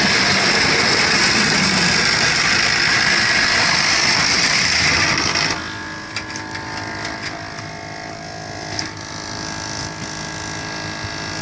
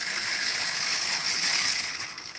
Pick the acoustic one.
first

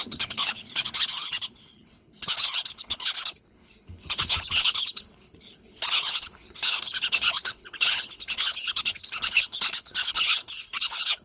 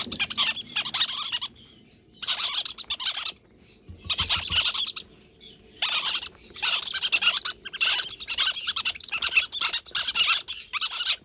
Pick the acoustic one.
second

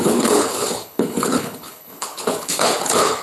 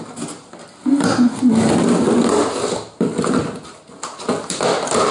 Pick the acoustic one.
second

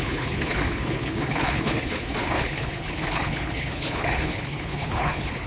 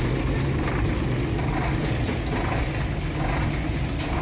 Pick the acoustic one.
second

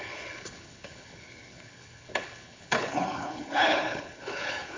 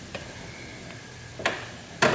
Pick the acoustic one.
second